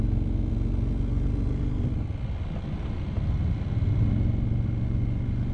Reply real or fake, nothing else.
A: real